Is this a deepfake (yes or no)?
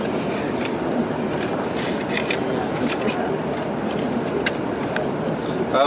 no